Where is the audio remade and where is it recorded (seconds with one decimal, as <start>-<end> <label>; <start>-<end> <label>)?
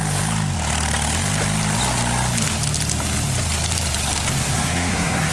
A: 0.0-4.4 recorded; 4.4-5.3 remade